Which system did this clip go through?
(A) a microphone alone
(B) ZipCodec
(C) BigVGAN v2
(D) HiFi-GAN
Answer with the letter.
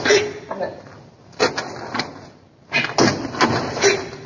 A